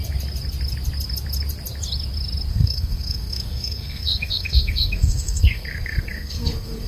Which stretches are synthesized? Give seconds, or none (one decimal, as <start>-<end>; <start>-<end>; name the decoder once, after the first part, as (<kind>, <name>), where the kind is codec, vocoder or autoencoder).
2.5-6.9 (codec, SNAC)

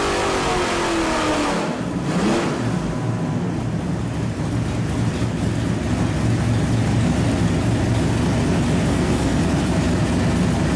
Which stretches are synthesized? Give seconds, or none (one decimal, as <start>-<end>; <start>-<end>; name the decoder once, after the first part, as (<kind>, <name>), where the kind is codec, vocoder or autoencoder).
8.9-9.4 (codec, SNAC)

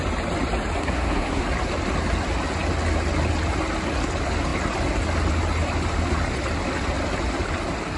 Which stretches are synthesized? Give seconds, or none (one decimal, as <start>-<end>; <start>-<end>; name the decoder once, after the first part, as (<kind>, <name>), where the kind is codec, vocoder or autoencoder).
0.8-1.4 (codec, SNAC)

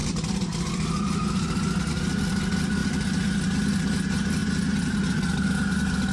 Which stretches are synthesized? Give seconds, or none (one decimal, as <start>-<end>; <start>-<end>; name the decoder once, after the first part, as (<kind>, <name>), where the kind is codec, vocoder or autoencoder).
none